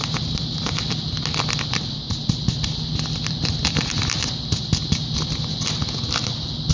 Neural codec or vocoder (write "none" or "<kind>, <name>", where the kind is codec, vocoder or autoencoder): none